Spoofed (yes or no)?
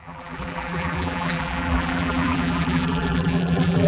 yes